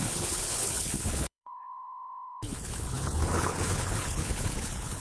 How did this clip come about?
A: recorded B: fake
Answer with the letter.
B